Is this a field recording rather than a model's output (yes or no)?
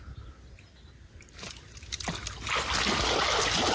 yes